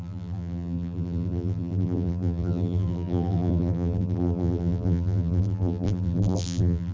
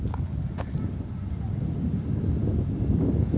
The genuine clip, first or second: second